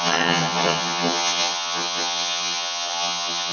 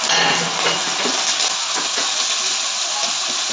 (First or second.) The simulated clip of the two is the first